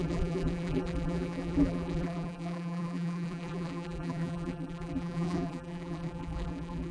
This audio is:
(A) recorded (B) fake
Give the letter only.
B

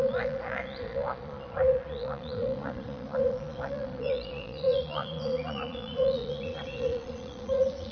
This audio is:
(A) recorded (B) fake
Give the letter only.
B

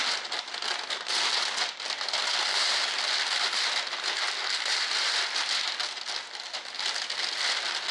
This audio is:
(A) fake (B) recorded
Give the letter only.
B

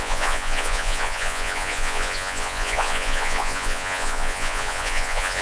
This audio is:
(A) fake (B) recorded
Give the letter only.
A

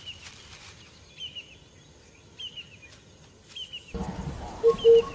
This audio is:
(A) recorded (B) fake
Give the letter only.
A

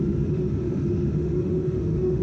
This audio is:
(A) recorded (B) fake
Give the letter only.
B